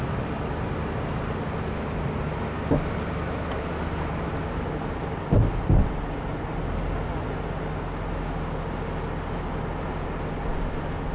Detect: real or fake real